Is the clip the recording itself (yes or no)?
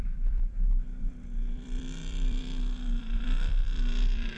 no